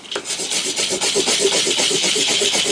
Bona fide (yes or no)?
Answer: yes